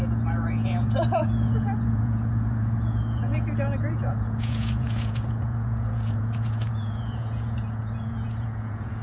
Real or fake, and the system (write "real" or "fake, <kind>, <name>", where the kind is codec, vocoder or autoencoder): fake, vocoder, Vocos